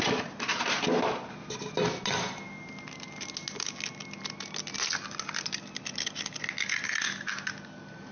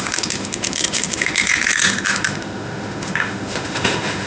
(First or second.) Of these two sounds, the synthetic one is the second